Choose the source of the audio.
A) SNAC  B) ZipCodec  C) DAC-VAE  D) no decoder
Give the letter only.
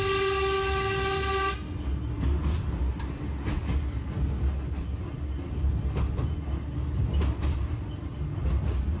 D